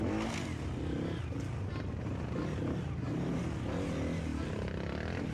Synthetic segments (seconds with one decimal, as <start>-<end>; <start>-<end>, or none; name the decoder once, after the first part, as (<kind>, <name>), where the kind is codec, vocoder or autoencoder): none